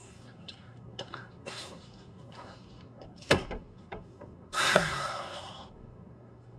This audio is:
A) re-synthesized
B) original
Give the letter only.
A